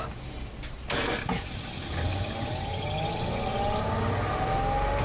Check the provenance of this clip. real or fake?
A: real